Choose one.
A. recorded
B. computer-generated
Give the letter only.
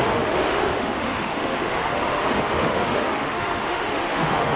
B